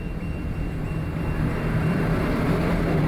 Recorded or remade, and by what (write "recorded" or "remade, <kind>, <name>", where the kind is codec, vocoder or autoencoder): remade, vocoder, BigVGAN v2